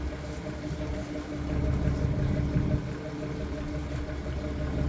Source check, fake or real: real